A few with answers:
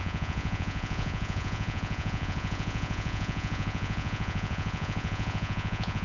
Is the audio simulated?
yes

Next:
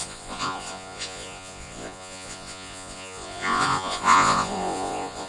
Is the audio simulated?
yes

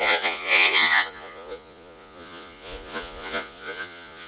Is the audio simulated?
yes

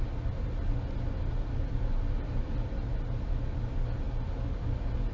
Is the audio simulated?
no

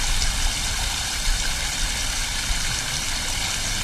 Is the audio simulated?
no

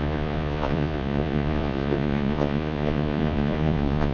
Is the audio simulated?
yes